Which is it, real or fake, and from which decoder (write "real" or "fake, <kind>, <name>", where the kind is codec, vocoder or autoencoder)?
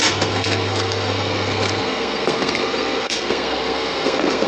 fake, codec, SNAC